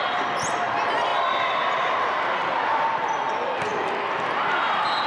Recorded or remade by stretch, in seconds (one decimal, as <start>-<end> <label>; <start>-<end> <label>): 0.0-5.1 recorded